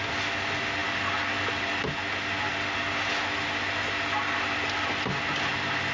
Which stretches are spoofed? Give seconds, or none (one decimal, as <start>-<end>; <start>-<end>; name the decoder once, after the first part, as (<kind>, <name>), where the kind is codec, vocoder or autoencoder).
none